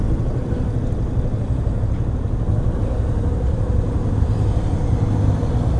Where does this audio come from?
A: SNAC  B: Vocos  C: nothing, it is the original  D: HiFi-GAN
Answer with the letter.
C